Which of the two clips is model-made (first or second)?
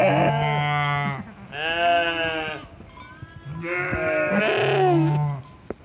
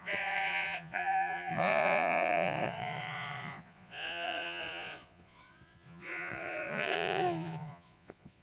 second